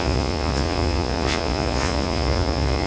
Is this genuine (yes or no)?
no